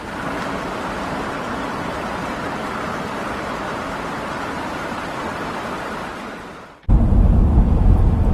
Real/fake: fake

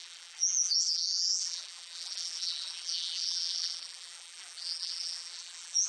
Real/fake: fake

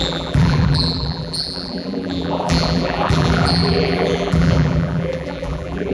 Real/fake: fake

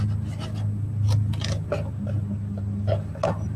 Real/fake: real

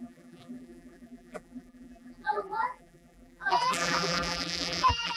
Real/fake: fake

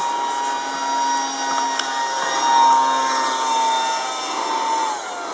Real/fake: real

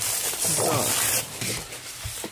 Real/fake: fake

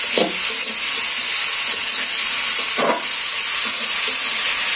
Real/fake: real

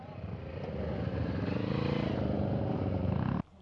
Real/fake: real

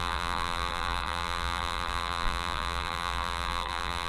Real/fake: fake